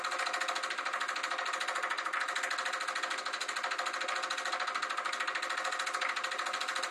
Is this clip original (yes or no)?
yes